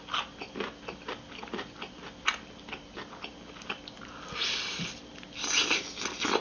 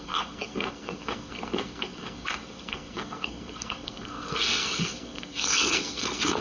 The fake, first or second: second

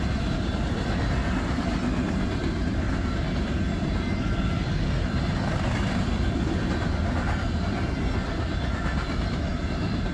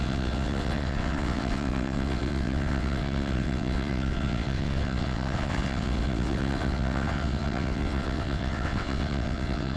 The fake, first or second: second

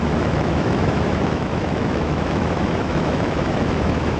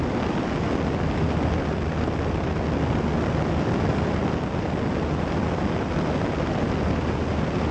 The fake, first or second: first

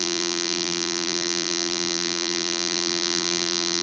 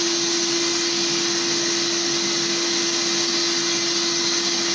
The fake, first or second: first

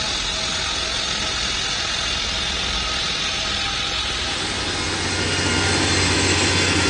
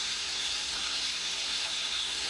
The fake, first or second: second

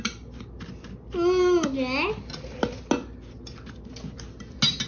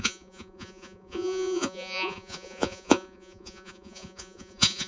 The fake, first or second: second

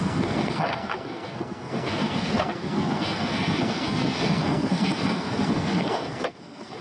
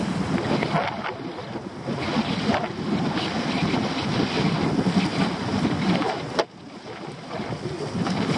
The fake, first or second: first